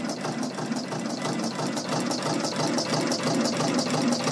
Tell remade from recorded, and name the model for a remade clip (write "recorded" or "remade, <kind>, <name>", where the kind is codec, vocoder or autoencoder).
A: recorded